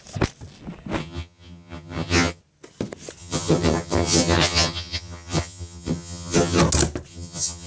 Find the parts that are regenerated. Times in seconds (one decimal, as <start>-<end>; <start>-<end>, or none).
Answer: 1.0-2.4; 3.2-6.6; 7.1-7.7